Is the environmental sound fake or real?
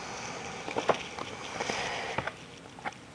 real